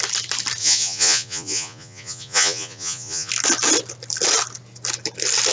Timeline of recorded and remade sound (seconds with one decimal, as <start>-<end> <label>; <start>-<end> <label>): 0.0-0.6 recorded; 0.6-3.3 remade; 3.3-5.5 recorded